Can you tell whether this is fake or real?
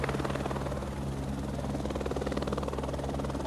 real